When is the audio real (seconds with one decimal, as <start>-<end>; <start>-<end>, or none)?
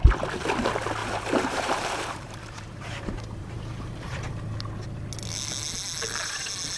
0.0-1.0; 4.1-6.8